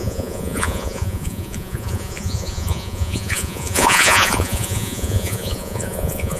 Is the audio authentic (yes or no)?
no